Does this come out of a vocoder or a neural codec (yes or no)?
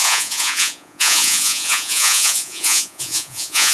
yes